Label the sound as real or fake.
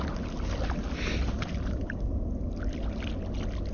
real